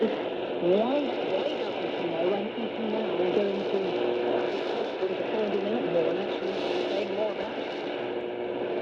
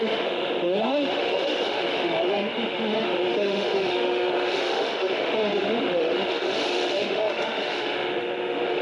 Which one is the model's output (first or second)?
second